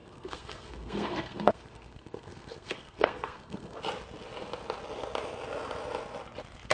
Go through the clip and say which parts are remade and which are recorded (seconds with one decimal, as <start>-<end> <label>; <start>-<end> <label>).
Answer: 0.0-3.8 remade; 3.8-6.7 recorded